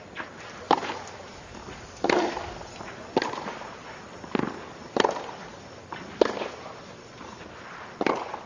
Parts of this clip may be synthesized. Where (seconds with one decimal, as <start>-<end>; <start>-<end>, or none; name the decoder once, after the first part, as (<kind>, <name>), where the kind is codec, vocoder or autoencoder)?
none